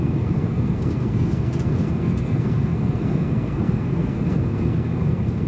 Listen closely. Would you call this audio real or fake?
fake